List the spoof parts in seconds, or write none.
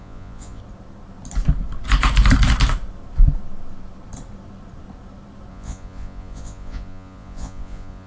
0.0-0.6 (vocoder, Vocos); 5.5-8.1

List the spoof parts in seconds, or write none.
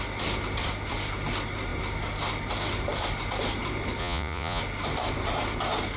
4.0-4.6 (vocoder, Vocos)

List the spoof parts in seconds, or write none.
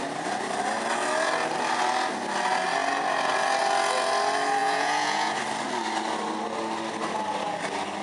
4.6-5.4 (vocoder, Vocos)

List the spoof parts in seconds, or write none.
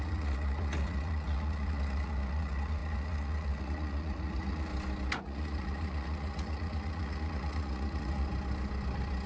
0.0-4.7 (vocoder, Vocos); 5.2-8.3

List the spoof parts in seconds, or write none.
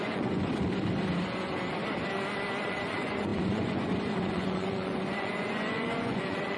0.0-0.5 (vocoder, Vocos); 2.6-6.6